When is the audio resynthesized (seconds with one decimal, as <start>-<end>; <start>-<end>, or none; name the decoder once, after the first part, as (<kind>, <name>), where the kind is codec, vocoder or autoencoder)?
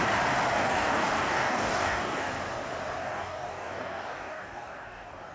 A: 0.7-2.3 (codec, DAC); 3.0-5.3